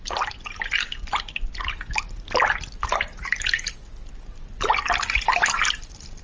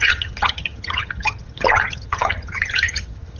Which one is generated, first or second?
second